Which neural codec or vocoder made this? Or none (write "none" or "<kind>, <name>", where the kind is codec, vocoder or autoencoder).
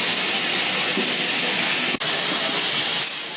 none